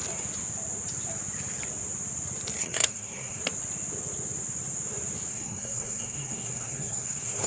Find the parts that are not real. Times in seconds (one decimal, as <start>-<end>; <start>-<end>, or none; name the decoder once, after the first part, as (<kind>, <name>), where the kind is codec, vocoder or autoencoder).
2.6-3.4 (codec, SNAC); 5.3-7.5